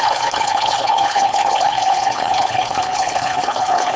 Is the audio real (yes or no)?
no